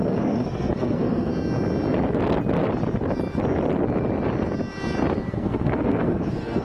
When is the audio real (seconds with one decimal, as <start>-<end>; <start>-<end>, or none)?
1.3-5.3